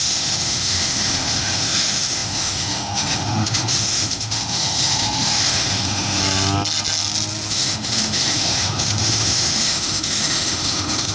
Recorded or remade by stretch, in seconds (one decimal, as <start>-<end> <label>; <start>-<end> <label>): 0.0-6.2 remade; 6.2-7.5 recorded; 7.5-11.1 remade